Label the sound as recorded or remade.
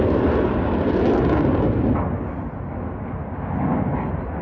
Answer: recorded